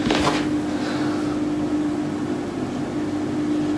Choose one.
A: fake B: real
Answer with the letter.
B